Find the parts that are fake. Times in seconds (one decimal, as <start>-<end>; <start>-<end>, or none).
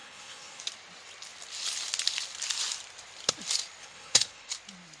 0.0-0.6; 3.8-4.5